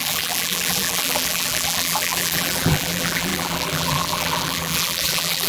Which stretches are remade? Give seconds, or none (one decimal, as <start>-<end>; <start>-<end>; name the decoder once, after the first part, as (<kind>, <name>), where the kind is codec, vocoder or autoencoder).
0.0-5.5 (vocoder, BigVGAN v2)